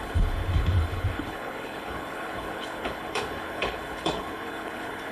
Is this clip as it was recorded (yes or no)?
no